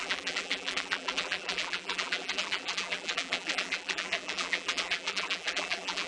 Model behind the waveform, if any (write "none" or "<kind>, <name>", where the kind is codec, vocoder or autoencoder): vocoder, BigVGAN v2